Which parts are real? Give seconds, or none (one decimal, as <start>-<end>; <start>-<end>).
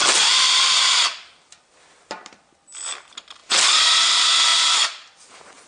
2.5-4.5; 5.3-5.7